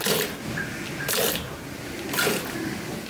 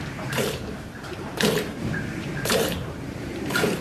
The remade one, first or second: second